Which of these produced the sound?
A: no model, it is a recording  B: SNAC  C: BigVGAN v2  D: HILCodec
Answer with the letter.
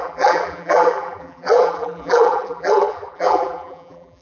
C